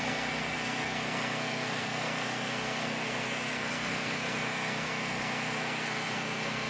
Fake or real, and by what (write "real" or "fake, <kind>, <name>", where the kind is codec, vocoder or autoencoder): fake, codec, SNAC